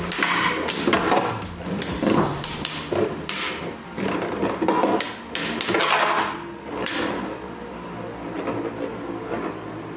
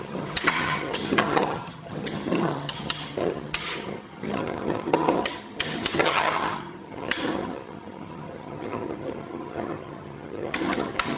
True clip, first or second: first